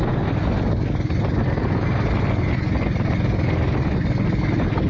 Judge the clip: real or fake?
real